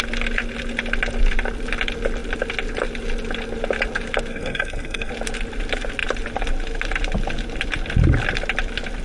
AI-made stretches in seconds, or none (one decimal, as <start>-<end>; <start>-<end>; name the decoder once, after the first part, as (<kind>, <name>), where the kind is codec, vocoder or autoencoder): 4.3-5.1 (codec, SNAC)